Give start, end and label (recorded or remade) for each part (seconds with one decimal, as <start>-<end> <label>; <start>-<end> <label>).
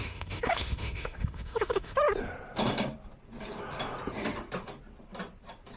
0.0-2.0 remade; 2.0-5.8 recorded